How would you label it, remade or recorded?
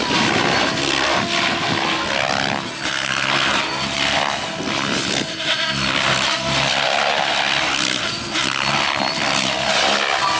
recorded